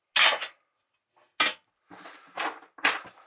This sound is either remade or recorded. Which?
recorded